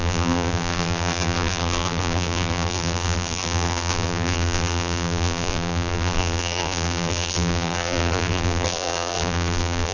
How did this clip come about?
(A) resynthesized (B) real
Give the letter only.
A